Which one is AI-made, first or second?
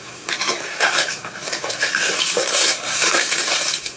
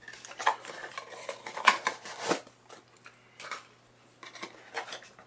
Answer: first